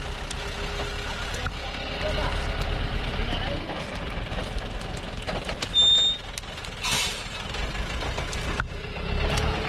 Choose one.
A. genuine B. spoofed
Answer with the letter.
A